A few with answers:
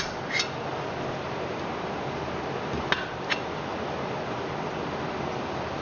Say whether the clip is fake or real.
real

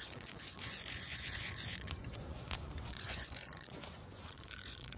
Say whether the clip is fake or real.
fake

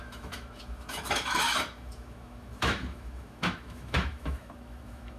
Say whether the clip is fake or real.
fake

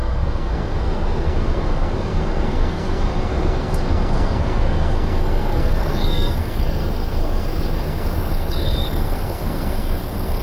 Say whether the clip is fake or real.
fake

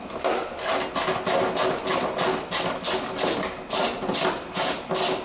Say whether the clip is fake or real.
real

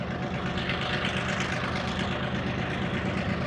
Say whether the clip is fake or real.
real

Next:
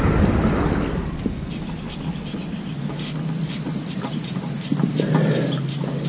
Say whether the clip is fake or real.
real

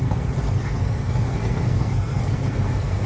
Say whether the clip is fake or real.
fake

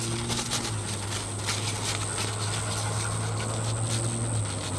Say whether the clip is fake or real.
real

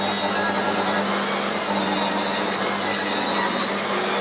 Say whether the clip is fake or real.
real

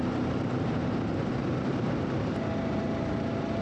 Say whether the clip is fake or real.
fake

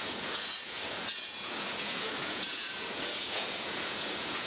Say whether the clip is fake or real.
fake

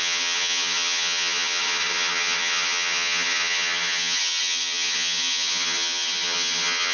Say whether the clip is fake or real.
fake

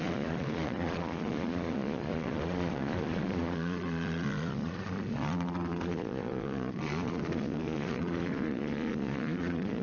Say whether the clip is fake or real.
fake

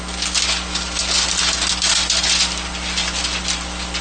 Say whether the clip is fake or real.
real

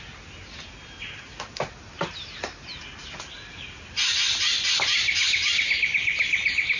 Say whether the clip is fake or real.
real